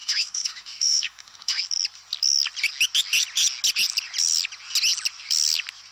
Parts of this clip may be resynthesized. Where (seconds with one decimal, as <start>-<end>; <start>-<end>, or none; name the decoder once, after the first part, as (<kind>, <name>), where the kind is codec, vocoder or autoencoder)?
0.0-1.6 (autoencoder, DAC-VAE)